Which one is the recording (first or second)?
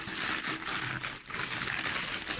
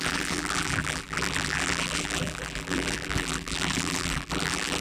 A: first